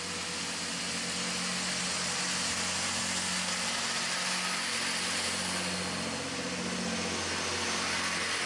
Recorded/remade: recorded